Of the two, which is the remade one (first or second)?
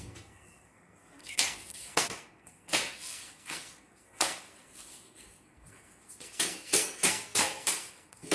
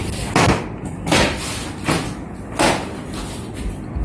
first